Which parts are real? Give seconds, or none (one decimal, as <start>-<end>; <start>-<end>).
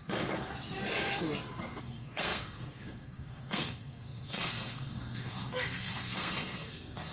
0.5-1.8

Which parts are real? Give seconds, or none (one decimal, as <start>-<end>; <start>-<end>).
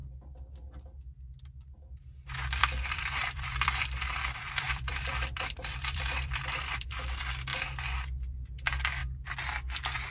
0.0-2.6; 6.4-10.1